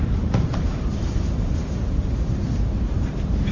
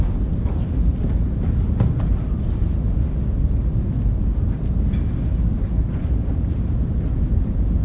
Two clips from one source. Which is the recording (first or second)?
second